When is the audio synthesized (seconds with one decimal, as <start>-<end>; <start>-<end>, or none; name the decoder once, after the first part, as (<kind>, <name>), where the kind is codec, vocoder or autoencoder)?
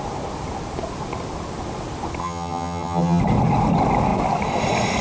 2.2-3.2 (vocoder, HiFi-GAN)